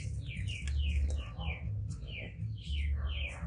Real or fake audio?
real